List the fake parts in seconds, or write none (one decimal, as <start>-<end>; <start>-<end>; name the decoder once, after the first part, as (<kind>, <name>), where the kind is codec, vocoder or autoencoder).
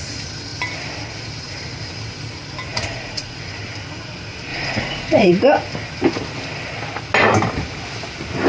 2.7-3.4 (vocoder, Vocos); 4.5-5.3